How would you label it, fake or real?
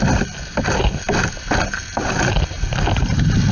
real